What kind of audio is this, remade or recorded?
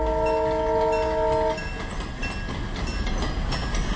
recorded